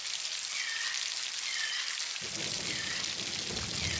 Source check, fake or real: real